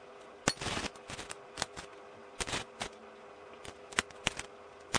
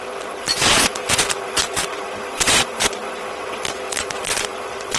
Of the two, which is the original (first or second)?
first